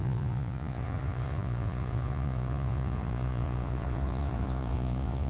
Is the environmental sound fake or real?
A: fake